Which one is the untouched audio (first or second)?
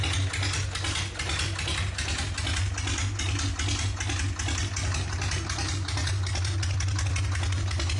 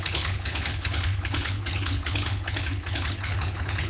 first